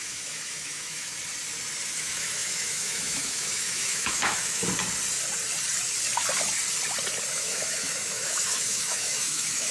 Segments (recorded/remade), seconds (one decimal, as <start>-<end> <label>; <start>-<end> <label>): 0.0-1.1 remade; 1.1-1.9 recorded; 1.9-4.6 remade; 4.6-7.3 recorded; 7.3-9.7 remade